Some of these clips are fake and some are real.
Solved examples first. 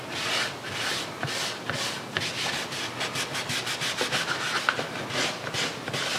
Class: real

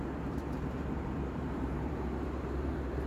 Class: fake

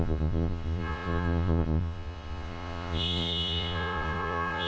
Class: fake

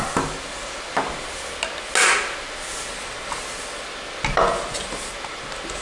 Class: real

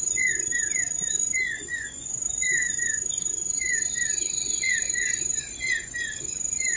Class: fake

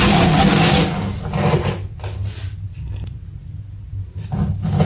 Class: real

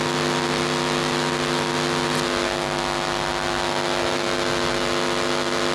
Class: real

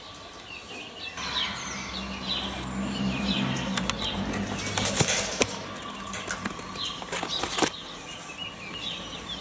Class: real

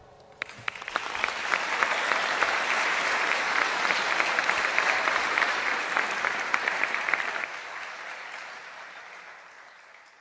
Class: fake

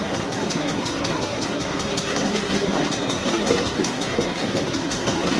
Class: fake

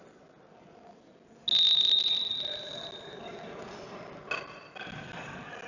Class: real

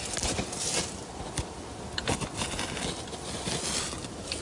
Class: real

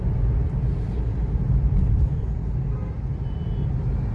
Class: real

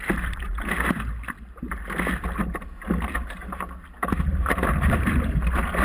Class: real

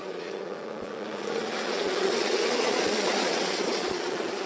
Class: fake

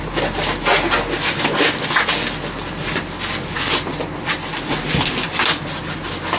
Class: real